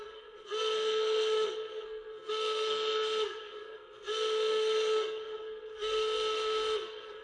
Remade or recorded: remade